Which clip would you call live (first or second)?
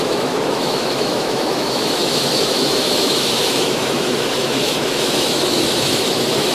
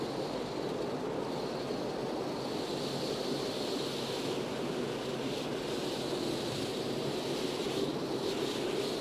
second